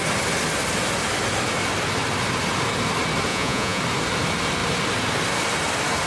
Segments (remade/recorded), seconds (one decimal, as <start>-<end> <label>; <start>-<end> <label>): 0.0-3.3 recorded; 3.3-3.8 remade; 3.8-6.1 recorded